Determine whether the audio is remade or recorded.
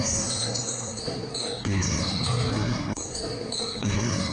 remade